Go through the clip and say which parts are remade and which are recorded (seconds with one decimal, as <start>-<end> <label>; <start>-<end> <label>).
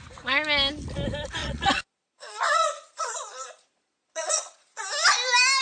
0.0-1.4 recorded; 1.4-4.8 remade; 4.8-5.6 recorded